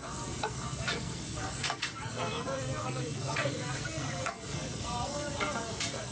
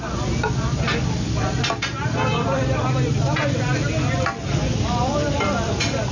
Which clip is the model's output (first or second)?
first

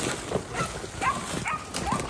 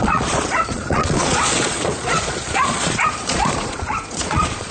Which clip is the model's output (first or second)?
second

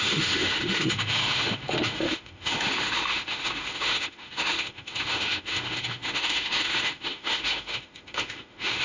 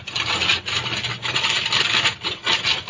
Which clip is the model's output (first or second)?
first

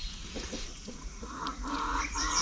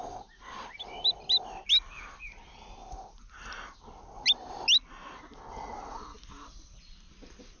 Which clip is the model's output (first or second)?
first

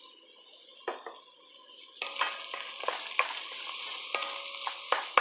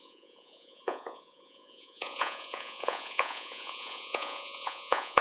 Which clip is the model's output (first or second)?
second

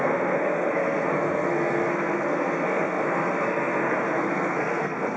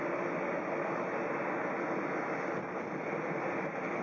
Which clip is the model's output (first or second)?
first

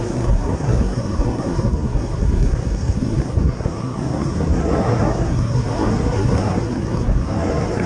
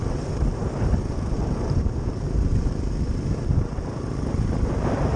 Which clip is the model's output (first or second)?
first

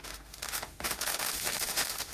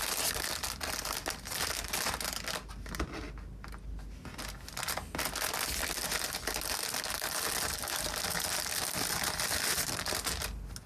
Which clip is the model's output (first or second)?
first